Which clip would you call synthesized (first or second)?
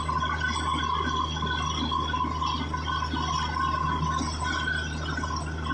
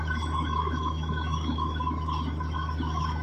second